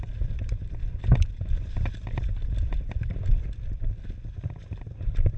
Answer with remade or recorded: recorded